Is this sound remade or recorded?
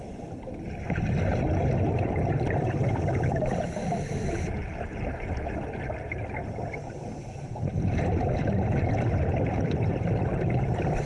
recorded